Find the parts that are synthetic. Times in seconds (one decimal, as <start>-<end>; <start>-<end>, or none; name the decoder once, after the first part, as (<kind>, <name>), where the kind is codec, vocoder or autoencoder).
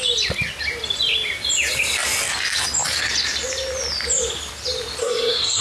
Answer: 5.0-5.6 (codec, SNAC)